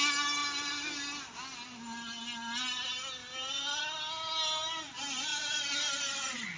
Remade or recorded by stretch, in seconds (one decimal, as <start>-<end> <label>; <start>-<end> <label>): 0.0-0.4 recorded; 0.4-0.9 remade; 0.9-3.2 recorded; 3.2-3.8 remade; 3.8-5.3 recorded; 5.3-5.9 remade; 5.9-6.6 recorded